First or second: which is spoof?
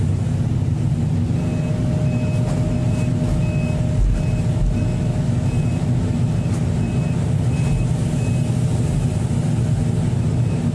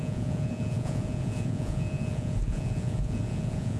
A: second